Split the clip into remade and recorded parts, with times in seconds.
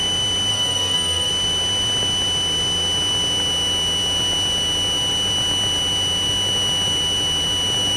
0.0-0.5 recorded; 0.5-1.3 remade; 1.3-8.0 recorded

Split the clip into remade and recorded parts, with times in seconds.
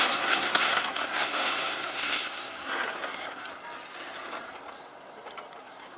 0.0-3.5 remade; 3.5-5.6 recorded; 5.6-6.0 remade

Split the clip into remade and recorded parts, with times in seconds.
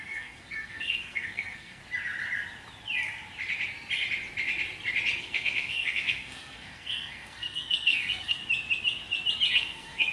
0.0-1.8 remade; 1.8-5.2 recorded; 5.2-8.4 remade; 8.4-9.5 recorded; 9.5-10.1 remade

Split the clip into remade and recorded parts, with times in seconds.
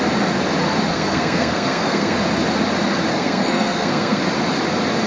0.0-0.9 recorded; 0.9-2.2 remade; 2.2-3.1 recorded; 3.1-4.2 remade; 4.2-5.1 recorded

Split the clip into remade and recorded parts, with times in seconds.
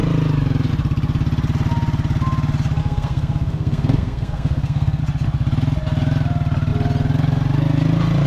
0.0-2.8 recorded; 2.8-5.0 remade; 5.0-8.3 recorded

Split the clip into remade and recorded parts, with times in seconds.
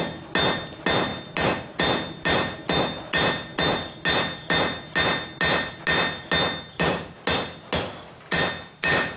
0.0-9.2 recorded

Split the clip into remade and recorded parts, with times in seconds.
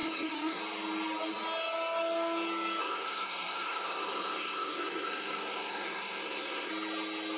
0.0-0.6 remade; 0.6-2.8 recorded; 2.8-6.7 remade; 6.7-7.4 recorded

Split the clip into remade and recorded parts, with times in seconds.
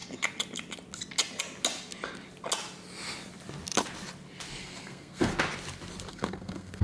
0.0-4.6 recorded; 4.6-5.3 remade; 5.3-6.1 recorded; 6.1-6.8 remade